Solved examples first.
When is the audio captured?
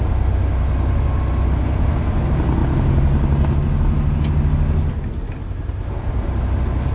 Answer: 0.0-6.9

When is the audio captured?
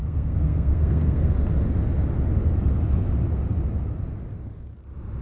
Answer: 1.3-5.2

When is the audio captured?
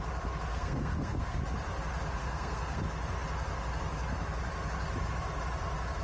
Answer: 0.0-0.5; 1.4-2.2; 2.8-6.0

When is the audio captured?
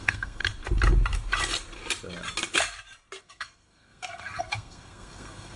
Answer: 0.4-3.2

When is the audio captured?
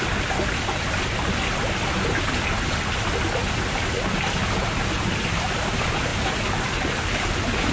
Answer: 0.0-7.7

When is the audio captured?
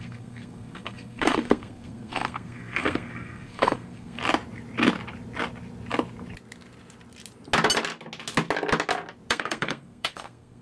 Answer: 4.2-9.3